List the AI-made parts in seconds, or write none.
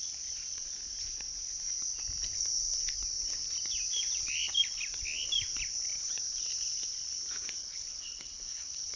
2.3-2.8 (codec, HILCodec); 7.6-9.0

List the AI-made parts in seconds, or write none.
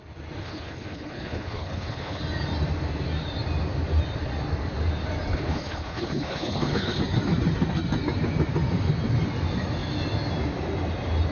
0.4-2.2 (codec, HILCodec); 5.3-7.0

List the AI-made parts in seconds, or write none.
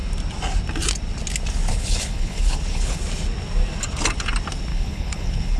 1.7-3.0 (codec, HILCodec); 4.7-5.6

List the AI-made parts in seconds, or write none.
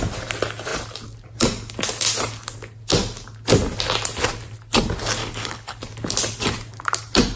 5.2-5.8 (codec, HILCodec)